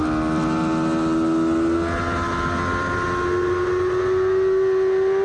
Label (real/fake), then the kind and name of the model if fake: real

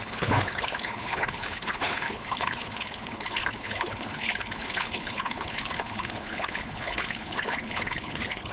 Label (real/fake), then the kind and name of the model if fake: fake, codec, HILCodec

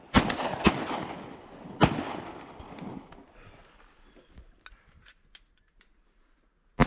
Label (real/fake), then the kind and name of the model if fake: real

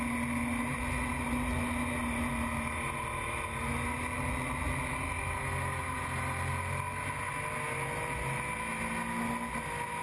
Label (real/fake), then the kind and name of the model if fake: real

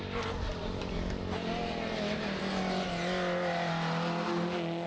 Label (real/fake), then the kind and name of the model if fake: real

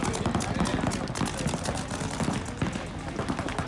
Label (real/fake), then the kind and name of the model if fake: real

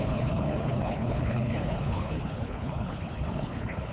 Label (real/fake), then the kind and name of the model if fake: fake, codec, HILCodec